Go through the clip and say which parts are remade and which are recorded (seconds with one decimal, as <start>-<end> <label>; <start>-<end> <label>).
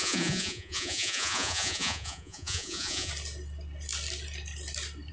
0.0-3.1 remade; 3.1-5.1 recorded